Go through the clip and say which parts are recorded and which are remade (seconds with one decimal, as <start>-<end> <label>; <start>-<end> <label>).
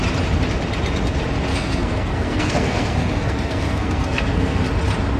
0.0-1.5 recorded; 1.5-4.6 remade; 4.6-5.2 recorded